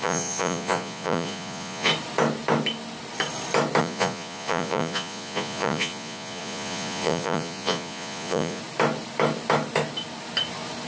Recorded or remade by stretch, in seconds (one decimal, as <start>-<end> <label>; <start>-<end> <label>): 0.0-1.9 remade; 1.9-3.8 recorded; 3.8-8.6 remade; 8.6-10.9 recorded